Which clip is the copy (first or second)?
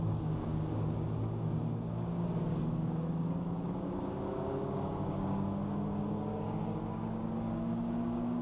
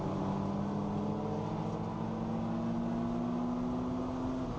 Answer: first